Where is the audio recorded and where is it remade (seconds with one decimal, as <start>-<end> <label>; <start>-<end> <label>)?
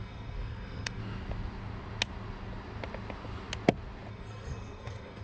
0.0-1.0 remade; 1.0-4.1 recorded; 4.1-5.2 remade